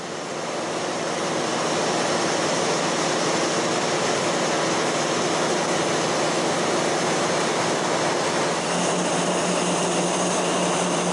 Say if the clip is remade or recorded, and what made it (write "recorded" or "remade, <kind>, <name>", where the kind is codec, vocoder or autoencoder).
recorded